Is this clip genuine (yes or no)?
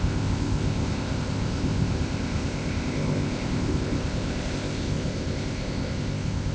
no